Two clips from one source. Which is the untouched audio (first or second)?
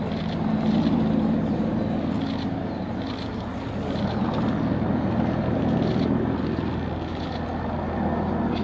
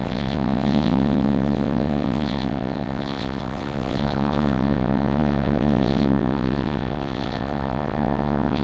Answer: first